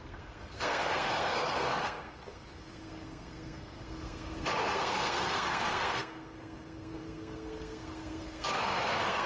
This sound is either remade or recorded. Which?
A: remade